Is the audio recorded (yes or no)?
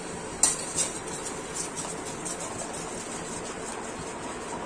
yes